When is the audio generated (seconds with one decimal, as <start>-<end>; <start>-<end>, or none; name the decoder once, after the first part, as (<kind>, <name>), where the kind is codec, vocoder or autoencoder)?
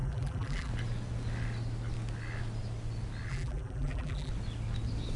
0.0-0.7 (vocoder, BigVGAN v2); 3.3-4.3